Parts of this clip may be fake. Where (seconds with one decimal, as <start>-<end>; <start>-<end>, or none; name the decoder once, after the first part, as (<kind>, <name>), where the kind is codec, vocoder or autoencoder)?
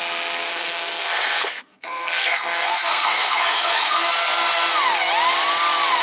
0.5-4.1 (codec, SNAC)